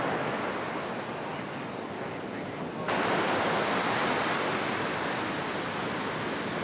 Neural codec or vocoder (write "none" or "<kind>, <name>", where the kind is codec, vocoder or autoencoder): none